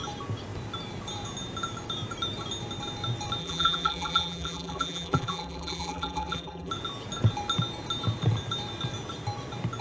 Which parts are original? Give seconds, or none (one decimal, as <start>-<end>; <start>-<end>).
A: 0.0-3.4; 6.7-9.8